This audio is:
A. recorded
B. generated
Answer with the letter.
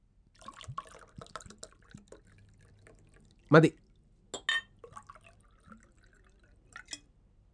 A